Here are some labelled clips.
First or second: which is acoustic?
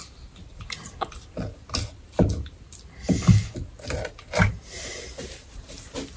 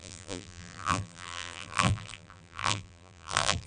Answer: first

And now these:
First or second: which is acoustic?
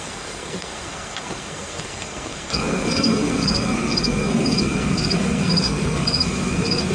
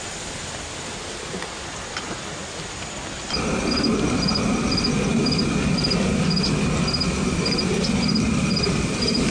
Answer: second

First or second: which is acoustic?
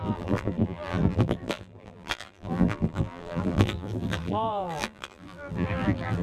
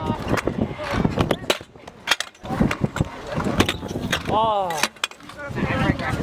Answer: second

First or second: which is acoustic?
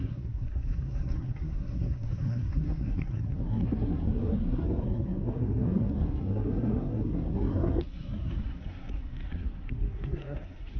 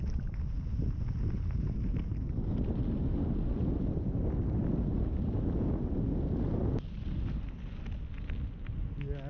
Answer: second